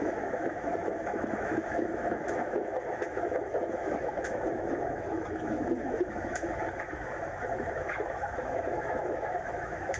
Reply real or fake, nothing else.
fake